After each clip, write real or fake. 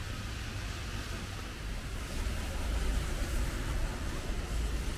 real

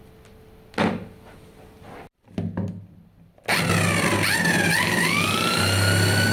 real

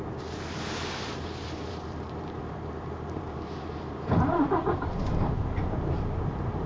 fake